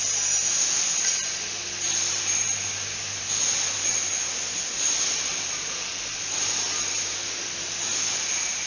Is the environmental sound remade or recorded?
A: recorded